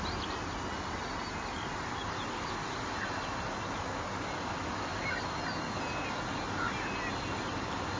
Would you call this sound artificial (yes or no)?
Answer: no